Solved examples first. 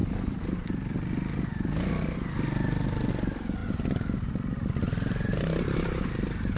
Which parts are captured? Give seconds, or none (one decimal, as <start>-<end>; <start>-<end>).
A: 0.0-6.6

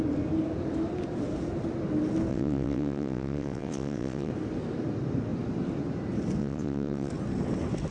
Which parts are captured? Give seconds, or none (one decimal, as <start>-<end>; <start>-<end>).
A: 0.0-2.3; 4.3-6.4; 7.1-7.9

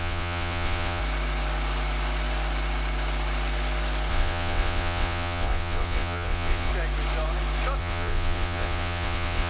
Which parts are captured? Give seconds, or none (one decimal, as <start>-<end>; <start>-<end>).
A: 1.0-4.1; 6.7-7.8